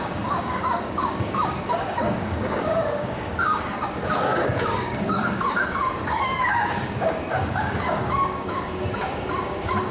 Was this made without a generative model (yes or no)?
no